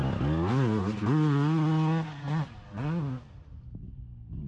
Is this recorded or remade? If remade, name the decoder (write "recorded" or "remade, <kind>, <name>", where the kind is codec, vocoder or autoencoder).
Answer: recorded